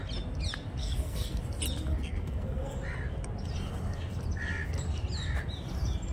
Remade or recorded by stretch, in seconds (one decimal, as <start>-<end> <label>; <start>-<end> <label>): 0.0-0.8 recorded; 0.8-1.4 remade; 1.4-1.9 recorded; 1.9-2.8 remade; 2.8-6.1 recorded